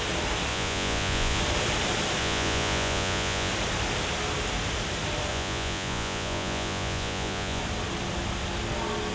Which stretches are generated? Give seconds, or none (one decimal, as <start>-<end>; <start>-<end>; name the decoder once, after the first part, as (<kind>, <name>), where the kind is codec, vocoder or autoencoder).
0.5-1.4 (vocoder, Vocos); 2.2-3.5; 5.3-7.6